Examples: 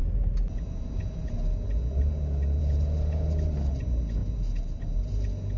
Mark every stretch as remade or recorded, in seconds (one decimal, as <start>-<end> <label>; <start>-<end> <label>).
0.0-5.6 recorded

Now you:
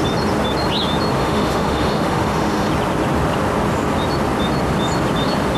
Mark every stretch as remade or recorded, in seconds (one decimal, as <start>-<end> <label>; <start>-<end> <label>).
0.0-1.2 recorded; 1.2-2.7 remade; 2.7-5.6 recorded

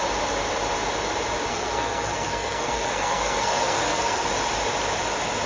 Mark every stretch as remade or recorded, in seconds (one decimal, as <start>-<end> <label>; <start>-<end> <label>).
0.0-1.5 recorded; 1.5-4.3 remade; 4.3-5.5 recorded

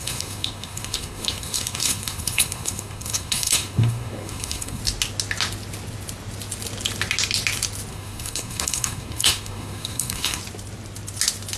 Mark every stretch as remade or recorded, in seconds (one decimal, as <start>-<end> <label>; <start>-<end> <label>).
0.0-4.8 remade; 4.8-7.9 recorded; 7.9-10.4 remade; 10.4-11.6 recorded